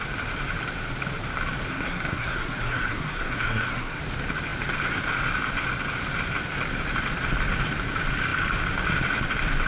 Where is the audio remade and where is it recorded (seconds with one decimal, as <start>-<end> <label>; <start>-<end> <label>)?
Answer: 0.0-1.7 recorded; 1.7-4.0 remade; 4.0-9.7 recorded